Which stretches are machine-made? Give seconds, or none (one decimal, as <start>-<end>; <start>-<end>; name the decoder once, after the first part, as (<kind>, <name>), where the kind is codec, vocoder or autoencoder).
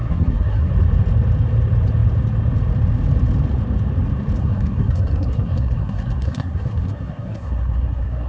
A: 0.0-0.7 (codec, SNAC); 4.4-8.3